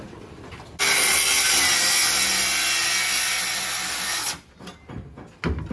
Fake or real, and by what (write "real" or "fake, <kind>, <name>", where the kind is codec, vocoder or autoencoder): real